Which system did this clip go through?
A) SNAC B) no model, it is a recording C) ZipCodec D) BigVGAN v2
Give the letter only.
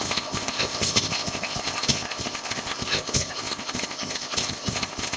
C